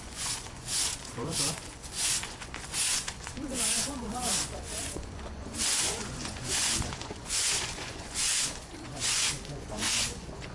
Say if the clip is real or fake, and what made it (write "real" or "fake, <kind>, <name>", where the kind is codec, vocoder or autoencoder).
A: fake, vocoder, Vocos